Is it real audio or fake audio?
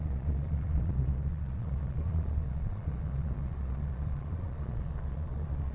fake